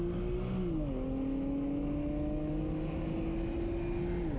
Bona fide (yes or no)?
yes